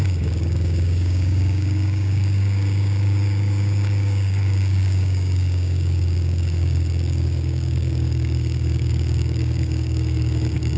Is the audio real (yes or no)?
no